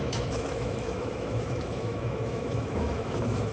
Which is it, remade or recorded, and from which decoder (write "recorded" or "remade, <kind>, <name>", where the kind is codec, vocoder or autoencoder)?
remade, autoencoder, DAC-VAE